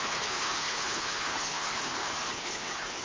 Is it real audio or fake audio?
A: fake